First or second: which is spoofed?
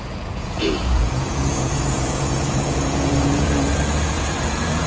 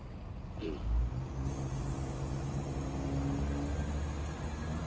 first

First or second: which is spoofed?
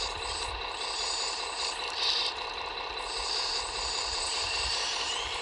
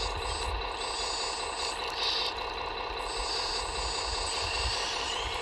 first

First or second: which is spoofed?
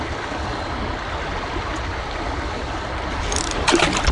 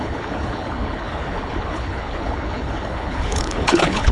second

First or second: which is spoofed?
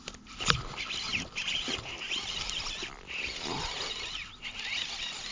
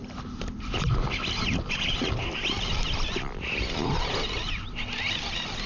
first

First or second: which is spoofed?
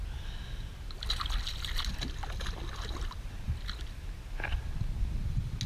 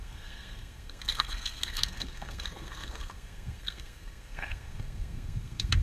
second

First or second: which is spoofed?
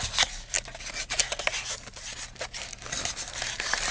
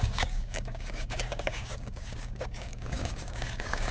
second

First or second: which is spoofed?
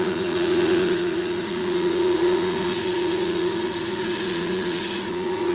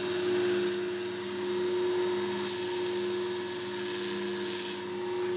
first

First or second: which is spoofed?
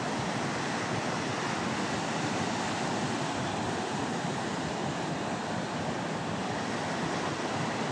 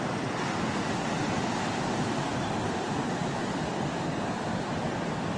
first